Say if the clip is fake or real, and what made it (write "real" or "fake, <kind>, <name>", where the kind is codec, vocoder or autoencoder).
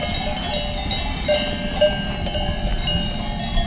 real